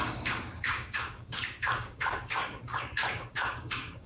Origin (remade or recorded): remade